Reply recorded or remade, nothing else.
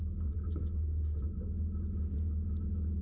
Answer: recorded